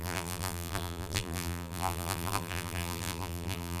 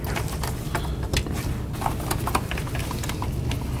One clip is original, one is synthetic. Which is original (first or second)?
second